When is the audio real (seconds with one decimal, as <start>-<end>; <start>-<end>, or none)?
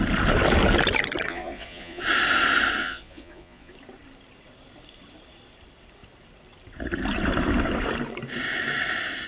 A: 0.0-1.3; 2.0-2.8; 3.7-9.3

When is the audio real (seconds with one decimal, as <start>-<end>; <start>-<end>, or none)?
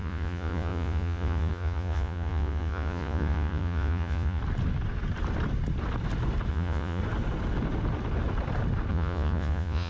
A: 4.4-6.5; 7.0-8.9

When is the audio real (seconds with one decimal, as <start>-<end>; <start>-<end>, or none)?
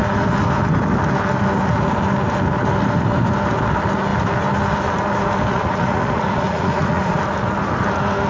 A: 0.0-5.5; 7.2-8.3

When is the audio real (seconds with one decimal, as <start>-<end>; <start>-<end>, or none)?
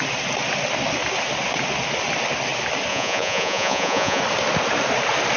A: 0.0-2.9; 4.2-5.4